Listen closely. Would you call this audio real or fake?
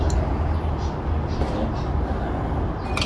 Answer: real